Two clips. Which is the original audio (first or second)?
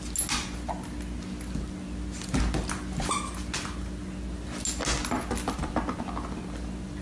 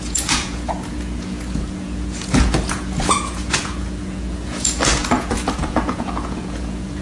first